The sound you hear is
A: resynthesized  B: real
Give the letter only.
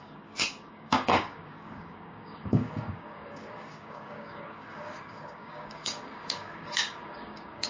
A